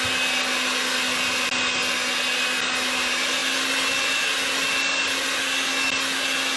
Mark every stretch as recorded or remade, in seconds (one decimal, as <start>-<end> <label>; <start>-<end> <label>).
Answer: 0.0-6.6 recorded

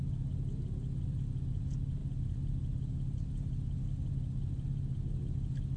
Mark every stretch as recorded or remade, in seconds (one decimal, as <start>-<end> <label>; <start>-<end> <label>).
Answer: 0.0-5.8 recorded

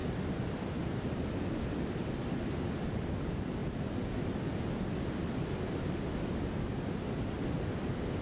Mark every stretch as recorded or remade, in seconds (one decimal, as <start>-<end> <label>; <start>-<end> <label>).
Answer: 0.0-8.2 recorded

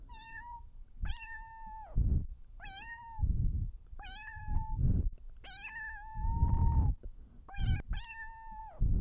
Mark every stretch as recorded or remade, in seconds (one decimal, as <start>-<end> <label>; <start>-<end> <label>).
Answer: 0.0-1.5 remade; 1.5-2.4 recorded; 2.4-5.1 remade; 5.1-8.6 recorded; 8.6-9.0 remade

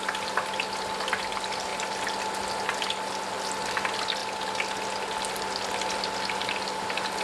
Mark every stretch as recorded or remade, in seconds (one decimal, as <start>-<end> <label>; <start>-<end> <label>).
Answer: 0.0-7.2 recorded